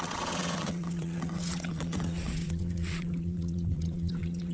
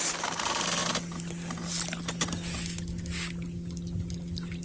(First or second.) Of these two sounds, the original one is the second